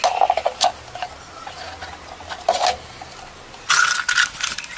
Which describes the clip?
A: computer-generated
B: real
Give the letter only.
B